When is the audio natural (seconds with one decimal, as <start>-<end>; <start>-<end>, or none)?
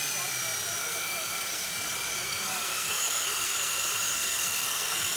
0.0-0.8; 1.7-2.1